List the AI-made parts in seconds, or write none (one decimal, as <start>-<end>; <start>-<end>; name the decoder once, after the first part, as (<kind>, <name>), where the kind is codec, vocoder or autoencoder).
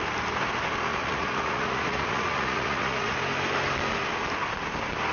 0.9-3.2 (vocoder, Vocos)